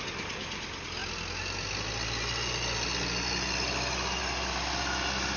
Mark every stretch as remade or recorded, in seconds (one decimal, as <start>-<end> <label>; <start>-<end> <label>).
0.0-5.4 recorded